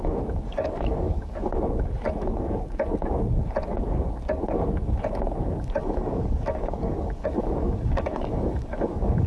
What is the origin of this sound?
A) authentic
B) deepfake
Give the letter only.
B